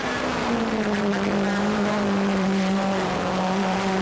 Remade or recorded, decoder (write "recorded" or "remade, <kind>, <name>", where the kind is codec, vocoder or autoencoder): remade, vocoder, BigVGAN v2